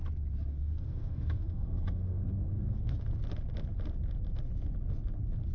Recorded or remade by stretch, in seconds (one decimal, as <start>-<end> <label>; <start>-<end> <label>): 0.0-0.5 recorded; 0.5-3.0 remade; 3.0-5.5 recorded